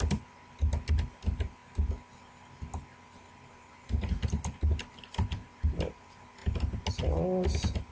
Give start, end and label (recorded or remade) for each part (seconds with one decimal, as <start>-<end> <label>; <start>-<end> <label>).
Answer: 0.0-7.9 recorded